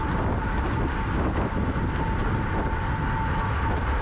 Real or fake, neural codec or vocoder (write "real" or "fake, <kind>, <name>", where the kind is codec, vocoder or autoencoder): real